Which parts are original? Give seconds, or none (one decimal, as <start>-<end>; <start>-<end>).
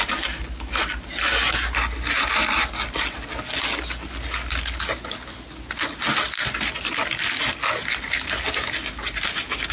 0.0-9.7